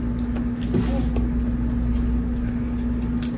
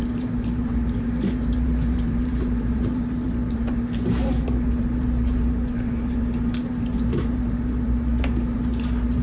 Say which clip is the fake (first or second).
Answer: second